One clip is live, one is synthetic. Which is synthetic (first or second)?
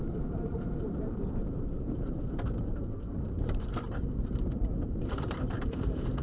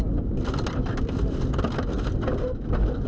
first